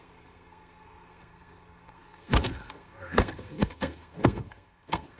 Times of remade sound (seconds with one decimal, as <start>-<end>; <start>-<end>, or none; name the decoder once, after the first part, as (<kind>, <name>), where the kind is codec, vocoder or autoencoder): 0.0-5.2 (codec, SNAC)